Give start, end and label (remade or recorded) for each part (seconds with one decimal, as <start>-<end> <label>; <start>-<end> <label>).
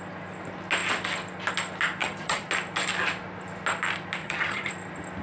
0.0-2.0 recorded; 2.0-2.5 remade; 2.5-4.2 recorded; 4.2-4.7 remade; 4.7-5.2 recorded